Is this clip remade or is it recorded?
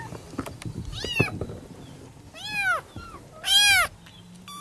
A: recorded